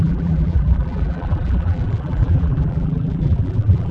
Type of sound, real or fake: fake